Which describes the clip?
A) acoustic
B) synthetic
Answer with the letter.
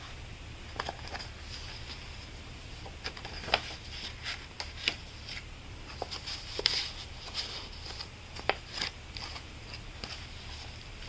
A